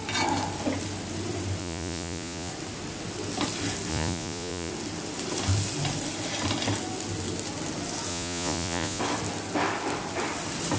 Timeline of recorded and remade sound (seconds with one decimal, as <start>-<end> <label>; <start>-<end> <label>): 0.0-1.6 recorded; 1.6-2.5 remade; 2.5-3.9 recorded; 3.9-4.7 remade; 4.7-8.1 recorded; 8.1-9.0 remade; 9.0-10.8 recorded